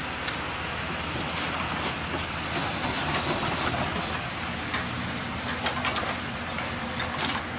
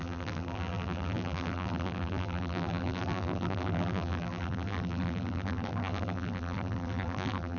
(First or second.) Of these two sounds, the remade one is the second